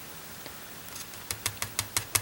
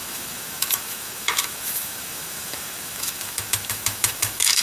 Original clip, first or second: first